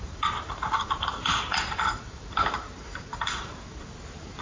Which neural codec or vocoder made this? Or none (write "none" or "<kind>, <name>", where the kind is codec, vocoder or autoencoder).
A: vocoder, BigVGAN v2